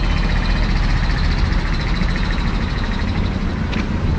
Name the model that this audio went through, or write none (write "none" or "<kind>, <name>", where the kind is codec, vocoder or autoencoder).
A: none